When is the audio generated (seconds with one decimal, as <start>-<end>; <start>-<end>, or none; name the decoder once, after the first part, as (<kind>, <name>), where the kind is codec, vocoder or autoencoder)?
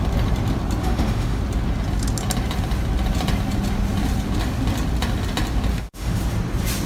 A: 0.8-1.4 (autoencoder, DAC-VAE); 5.7-6.2